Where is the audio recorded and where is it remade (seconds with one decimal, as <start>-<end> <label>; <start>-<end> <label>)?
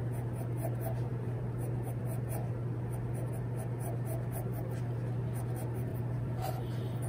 0.0-5.9 recorded; 5.9-6.5 remade; 6.5-7.1 recorded